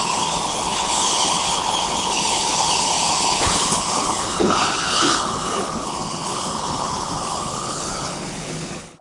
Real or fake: fake